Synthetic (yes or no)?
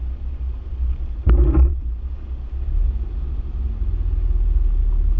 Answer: no